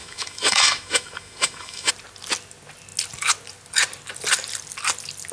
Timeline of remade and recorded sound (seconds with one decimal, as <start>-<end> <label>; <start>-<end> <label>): 0.0-1.9 remade; 1.9-5.3 recorded